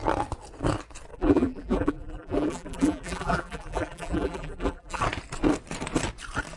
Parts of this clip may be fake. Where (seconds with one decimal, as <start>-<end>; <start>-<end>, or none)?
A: 1.1-5.0